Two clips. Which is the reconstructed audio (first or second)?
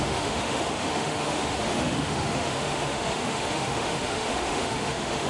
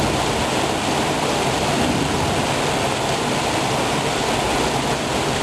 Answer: first